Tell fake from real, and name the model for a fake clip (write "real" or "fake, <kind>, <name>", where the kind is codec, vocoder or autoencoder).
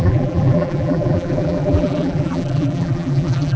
fake, vocoder, BigVGAN v2